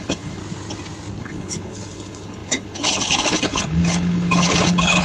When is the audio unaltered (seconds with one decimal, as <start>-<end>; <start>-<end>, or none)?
0.4-1.2